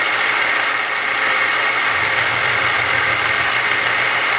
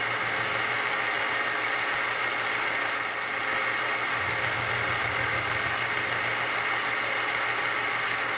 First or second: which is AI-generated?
first